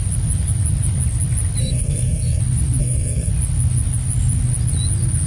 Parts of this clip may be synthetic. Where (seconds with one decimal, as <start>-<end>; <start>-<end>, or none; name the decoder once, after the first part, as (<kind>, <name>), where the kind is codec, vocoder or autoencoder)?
1.6-2.4 (codec, SNAC); 2.8-3.3